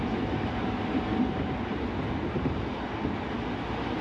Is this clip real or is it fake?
real